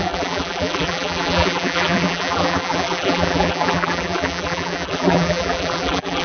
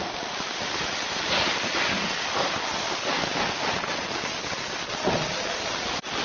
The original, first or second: second